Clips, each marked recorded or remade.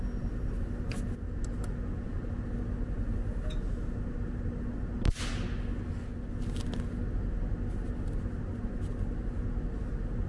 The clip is recorded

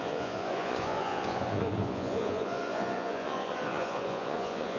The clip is remade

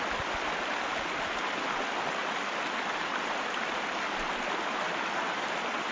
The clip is recorded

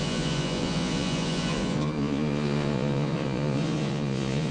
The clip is remade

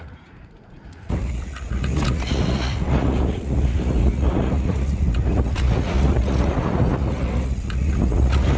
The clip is remade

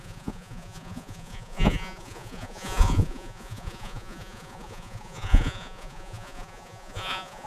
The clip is remade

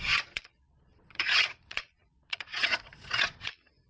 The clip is remade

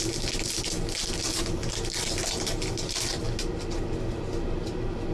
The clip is recorded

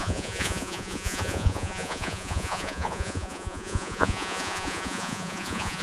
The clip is remade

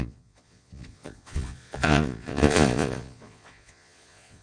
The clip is remade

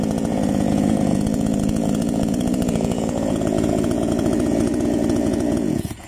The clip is remade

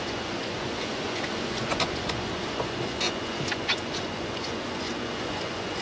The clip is remade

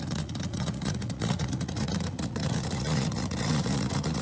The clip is remade